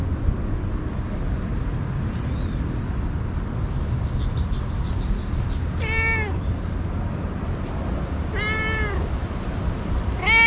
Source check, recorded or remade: recorded